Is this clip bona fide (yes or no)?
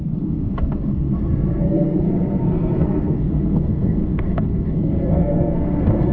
no